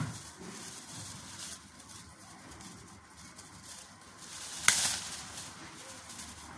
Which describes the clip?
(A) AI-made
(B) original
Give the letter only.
B